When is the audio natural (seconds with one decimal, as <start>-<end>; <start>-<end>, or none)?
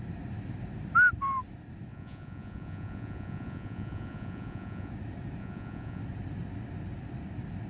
0.0-1.9; 4.9-5.4; 6.0-7.7